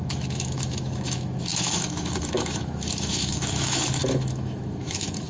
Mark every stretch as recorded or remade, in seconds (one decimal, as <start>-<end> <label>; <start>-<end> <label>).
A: 0.0-5.3 remade